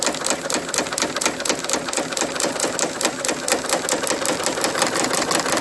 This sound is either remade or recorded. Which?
recorded